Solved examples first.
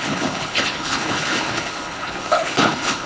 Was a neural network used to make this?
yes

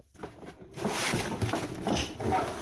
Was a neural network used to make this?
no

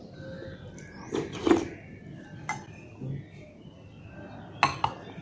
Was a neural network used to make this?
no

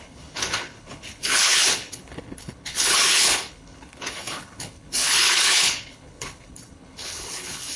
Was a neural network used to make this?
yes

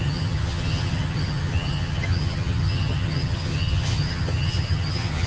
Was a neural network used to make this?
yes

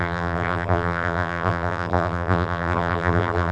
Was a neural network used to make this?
yes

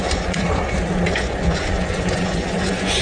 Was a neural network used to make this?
yes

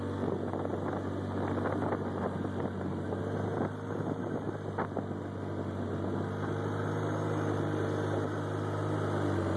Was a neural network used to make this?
no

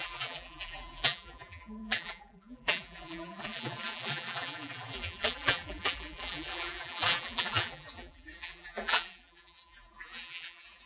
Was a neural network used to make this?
yes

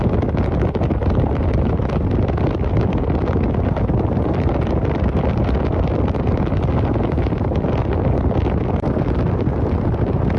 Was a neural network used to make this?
no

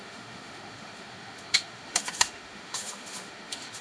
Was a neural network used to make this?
yes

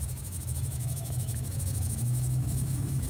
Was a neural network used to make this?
yes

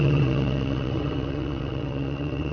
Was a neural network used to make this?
yes